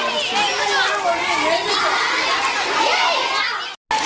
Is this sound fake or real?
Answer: real